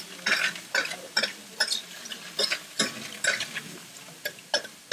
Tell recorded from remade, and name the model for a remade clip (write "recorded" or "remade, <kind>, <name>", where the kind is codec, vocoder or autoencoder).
recorded